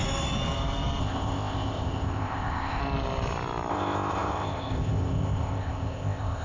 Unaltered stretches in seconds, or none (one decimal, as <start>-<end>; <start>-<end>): 0.0-1.0; 2.8-3.7